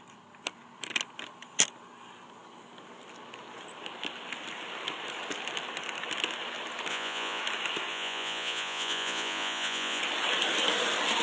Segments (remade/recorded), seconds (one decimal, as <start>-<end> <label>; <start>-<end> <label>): 0.0-6.9 recorded; 6.9-7.4 remade; 7.4-7.9 recorded; 7.9-10.0 remade; 10.0-11.2 recorded